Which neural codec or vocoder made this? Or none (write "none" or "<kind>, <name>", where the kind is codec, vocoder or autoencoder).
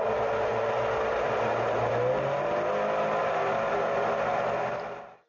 none